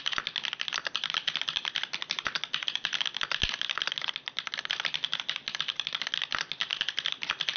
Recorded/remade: recorded